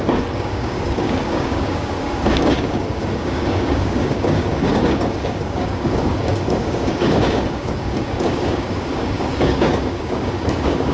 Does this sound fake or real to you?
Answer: fake